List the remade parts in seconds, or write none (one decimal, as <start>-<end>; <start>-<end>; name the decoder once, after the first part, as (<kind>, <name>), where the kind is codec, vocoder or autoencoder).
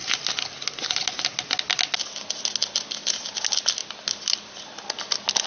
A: none